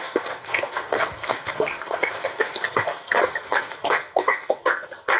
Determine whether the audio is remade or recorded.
remade